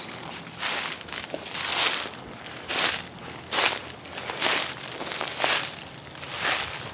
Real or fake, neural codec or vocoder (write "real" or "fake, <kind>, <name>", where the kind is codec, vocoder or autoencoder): real